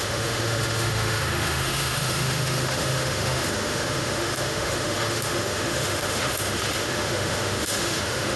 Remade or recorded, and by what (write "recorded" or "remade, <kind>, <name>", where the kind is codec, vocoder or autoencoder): remade, autoencoder, DAC-VAE